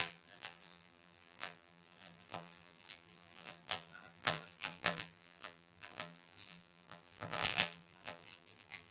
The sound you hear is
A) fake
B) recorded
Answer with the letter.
A